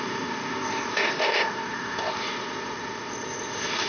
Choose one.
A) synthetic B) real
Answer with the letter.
A